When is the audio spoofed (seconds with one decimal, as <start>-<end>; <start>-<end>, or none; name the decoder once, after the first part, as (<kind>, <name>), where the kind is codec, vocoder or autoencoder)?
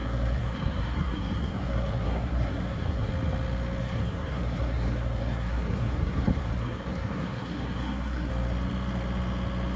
0.0-3.1 (codec, SNAC); 3.8-8.3